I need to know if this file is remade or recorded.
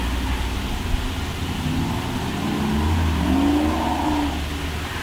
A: recorded